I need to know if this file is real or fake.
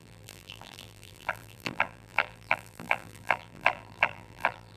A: fake